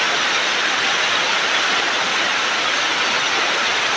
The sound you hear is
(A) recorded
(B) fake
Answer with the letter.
A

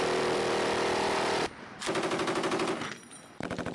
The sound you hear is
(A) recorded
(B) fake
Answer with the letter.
A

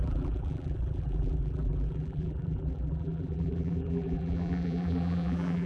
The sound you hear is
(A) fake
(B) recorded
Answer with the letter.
A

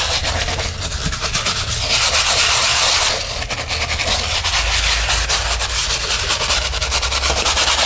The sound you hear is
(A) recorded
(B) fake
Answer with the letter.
A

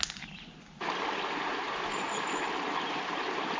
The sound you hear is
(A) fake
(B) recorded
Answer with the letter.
B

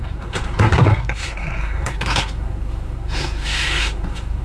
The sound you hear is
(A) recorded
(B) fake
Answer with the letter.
B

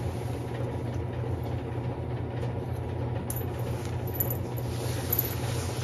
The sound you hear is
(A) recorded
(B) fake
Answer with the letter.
A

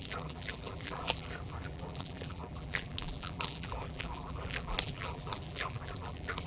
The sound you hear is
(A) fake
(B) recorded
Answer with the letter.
A